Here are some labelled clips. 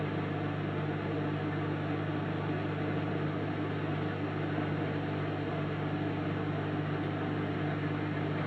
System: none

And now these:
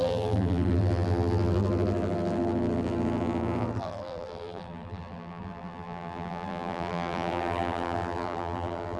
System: vocoder, BigVGAN v2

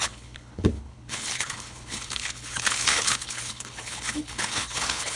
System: codec, HILCodec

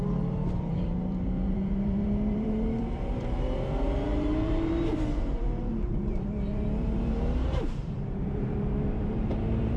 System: vocoder, BigVGAN v2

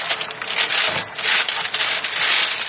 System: none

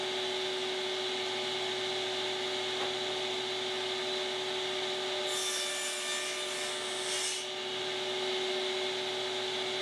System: none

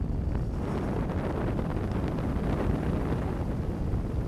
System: none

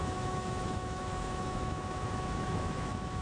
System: autoencoder, DAC-VAE